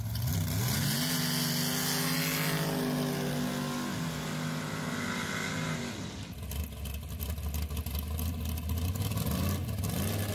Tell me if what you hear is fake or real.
real